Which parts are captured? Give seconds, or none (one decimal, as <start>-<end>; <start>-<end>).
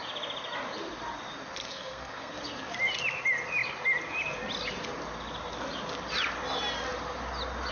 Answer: 0.0-1.6; 2.3-7.7